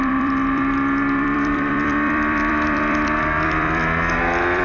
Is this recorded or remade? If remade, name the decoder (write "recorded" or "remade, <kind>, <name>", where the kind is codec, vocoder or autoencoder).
remade, vocoder, BigVGAN v2